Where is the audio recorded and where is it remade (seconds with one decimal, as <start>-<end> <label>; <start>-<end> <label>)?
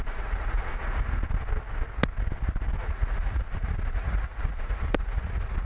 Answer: 0.0-0.7 remade; 0.7-2.8 recorded; 2.8-5.7 remade